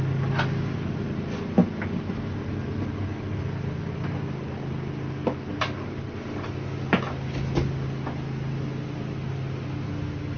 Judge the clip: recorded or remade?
recorded